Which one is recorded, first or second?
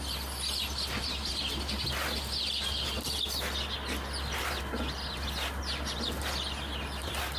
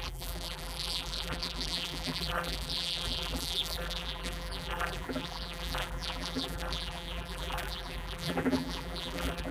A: first